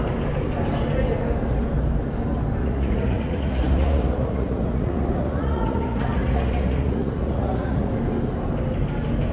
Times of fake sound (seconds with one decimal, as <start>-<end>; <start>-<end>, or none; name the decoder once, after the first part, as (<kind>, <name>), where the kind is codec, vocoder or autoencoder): 2.6-7.9 (vocoder, Vocos)